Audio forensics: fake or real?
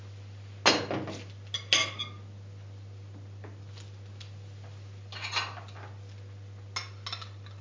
real